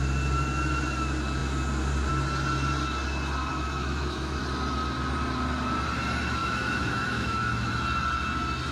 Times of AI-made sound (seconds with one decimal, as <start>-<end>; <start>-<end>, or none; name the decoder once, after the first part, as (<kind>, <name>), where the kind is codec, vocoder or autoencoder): 3.5-4.4 (autoencoder, DAC-VAE); 6.4-7.7